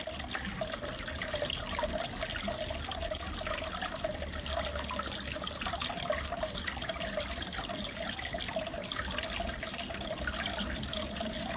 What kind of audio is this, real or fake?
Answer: real